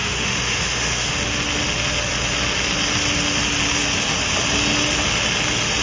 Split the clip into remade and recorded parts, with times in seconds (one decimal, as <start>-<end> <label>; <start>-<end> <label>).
0.0-1.2 remade; 1.2-5.8 recorded